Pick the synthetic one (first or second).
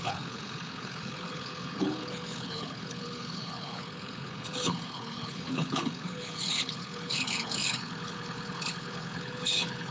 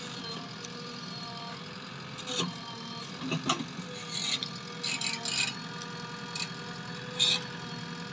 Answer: first